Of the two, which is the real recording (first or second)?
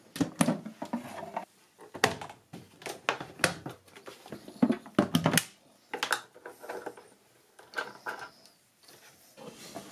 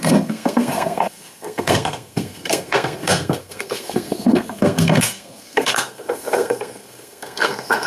first